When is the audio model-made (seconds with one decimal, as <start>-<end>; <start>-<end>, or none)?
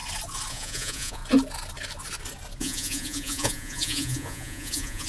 0.5-1.2; 2.6-5.1